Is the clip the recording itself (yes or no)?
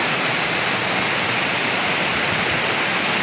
yes